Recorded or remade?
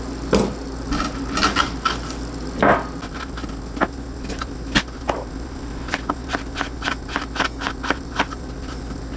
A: recorded